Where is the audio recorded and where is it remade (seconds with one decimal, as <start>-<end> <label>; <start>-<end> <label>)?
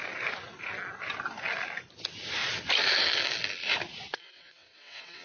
0.0-3.9 recorded; 3.9-5.2 remade